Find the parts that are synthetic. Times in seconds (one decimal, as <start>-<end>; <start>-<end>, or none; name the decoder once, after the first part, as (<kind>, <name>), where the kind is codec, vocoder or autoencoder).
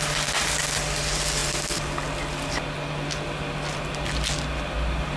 none